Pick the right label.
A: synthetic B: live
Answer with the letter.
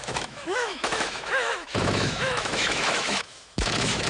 A